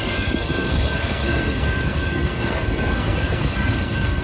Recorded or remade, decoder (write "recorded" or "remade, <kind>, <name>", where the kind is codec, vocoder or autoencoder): remade, codec, SNAC